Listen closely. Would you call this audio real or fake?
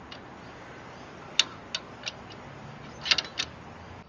real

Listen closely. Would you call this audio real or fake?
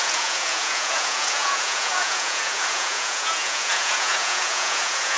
fake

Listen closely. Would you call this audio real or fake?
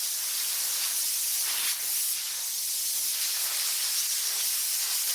fake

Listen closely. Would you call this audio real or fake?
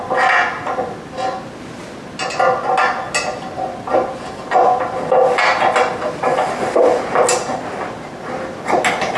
real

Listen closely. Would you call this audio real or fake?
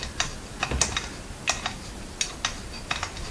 real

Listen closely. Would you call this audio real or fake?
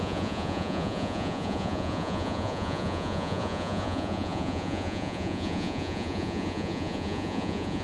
fake